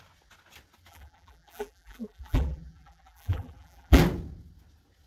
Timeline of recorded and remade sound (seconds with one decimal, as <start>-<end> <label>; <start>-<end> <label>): 0.0-0.9 recorded; 0.9-4.0 remade; 4.0-5.1 recorded